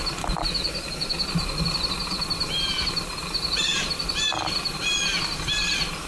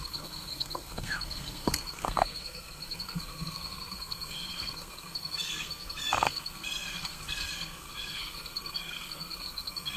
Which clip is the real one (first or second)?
first